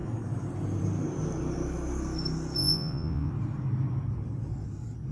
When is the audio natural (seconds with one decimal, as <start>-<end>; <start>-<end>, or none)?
0.0-2.6; 3.3-5.1